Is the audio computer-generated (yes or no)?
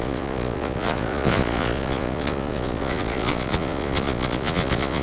yes